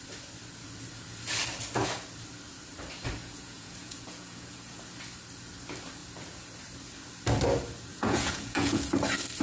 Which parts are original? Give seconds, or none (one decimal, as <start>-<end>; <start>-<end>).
0.0-3.2; 4.8-7.9; 8.9-9.4